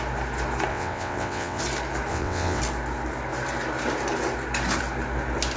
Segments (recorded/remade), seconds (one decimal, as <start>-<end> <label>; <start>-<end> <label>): 0.0-0.7 recorded; 0.7-1.6 remade; 1.6-2.1 recorded; 2.1-2.6 remade; 2.6-5.6 recorded